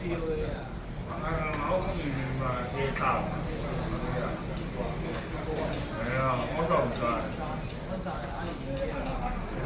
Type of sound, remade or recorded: recorded